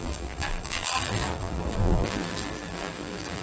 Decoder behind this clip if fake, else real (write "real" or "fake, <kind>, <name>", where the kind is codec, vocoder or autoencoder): fake, vocoder, BigVGAN v2